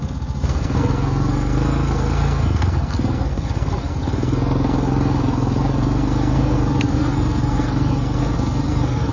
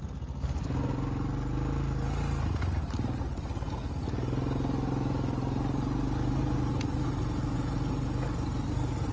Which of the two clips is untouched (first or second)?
second